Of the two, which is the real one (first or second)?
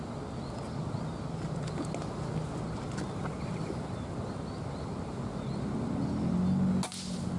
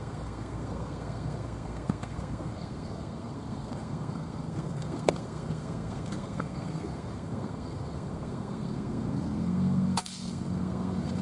first